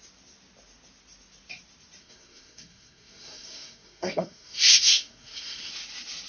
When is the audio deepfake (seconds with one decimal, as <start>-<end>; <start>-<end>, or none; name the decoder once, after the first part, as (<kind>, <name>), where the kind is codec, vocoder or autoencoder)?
2.0-5.7 (codec, SNAC)